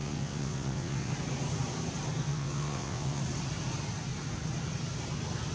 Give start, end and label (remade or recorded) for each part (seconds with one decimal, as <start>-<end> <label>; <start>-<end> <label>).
0.0-1.1 remade; 1.1-2.2 recorded; 2.2-3.2 remade; 3.2-5.5 recorded